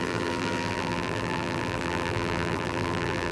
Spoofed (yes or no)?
yes